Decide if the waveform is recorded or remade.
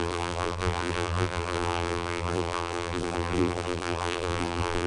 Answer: remade